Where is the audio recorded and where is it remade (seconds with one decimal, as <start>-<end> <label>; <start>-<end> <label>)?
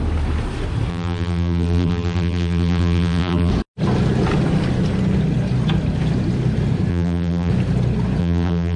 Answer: 0.0-0.9 recorded; 0.9-3.5 remade; 3.5-6.9 recorded; 6.9-7.5 remade; 7.5-8.2 recorded; 8.2-8.8 remade